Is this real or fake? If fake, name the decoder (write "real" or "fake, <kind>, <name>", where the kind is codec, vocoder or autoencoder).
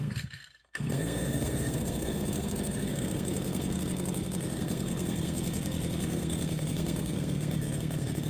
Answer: fake, codec, SNAC